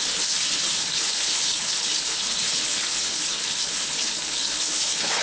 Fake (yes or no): yes